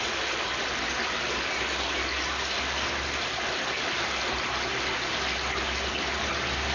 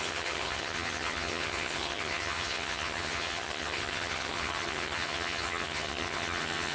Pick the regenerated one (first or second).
second